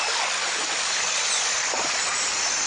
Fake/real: real